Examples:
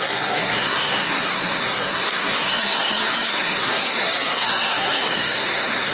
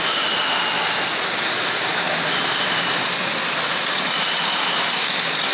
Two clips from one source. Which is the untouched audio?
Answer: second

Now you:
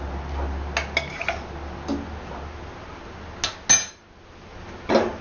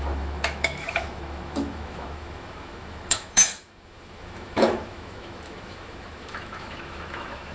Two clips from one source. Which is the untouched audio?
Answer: first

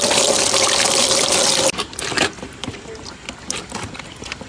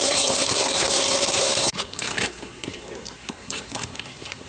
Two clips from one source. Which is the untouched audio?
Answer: first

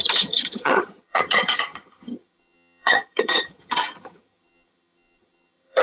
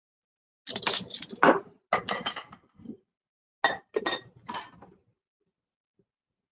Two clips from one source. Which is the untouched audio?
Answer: second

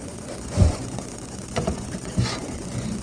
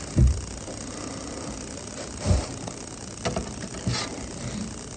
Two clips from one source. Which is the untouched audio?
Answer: second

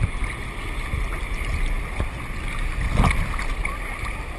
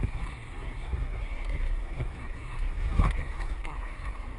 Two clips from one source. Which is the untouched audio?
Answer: first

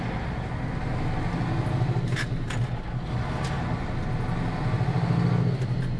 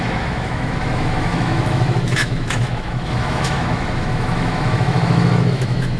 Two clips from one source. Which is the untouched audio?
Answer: first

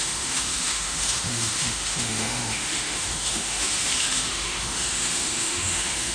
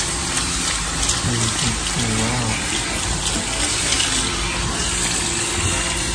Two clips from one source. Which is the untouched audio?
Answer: second